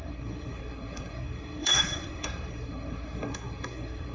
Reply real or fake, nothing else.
fake